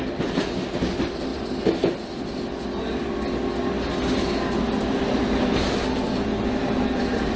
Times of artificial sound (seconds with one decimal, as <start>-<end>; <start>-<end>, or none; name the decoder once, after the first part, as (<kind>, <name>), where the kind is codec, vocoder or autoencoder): none